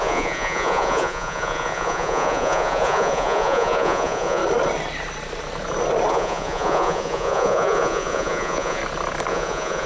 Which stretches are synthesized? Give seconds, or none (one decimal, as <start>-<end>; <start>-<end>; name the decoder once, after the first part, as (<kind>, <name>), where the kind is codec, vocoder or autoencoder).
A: 0.0-4.4 (vocoder, Vocos); 6.1-8.8; 9.3-9.9